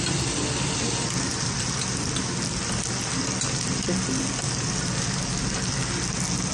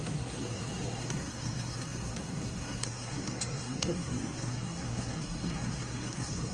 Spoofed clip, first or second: second